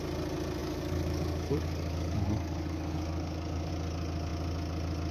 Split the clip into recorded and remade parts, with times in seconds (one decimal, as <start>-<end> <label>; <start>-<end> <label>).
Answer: 0.0-0.6 recorded; 0.6-3.7 remade; 3.7-5.1 recorded